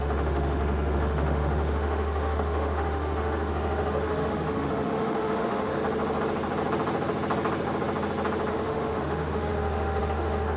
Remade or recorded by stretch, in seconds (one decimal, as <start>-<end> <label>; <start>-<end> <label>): 0.0-5.8 remade; 5.8-8.5 recorded; 8.5-10.6 remade